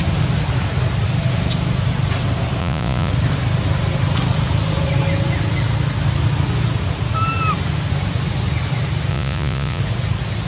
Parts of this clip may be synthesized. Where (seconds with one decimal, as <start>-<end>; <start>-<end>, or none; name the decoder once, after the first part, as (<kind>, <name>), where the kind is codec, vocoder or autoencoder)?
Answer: 2.6-3.1 (vocoder, Vocos); 9.1-9.8

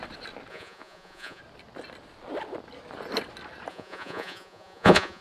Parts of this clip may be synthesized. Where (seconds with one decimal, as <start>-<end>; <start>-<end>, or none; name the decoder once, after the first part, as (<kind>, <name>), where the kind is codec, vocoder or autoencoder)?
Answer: 0.5-1.4 (vocoder, Vocos); 3.7-5.2

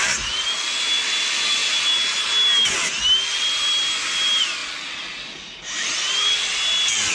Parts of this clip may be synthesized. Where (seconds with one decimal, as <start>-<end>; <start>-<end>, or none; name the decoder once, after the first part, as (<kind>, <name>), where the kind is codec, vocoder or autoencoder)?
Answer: none